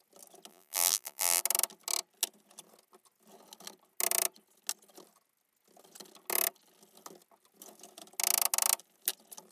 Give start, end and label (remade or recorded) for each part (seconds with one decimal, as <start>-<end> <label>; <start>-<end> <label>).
0.0-0.5 recorded; 0.5-1.4 remade; 1.4-9.5 recorded